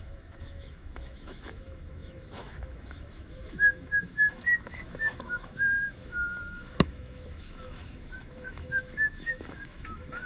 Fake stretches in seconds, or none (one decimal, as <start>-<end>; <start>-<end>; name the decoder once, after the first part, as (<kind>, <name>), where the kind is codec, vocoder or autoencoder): 0.0-10.3 (autoencoder, DAC-VAE)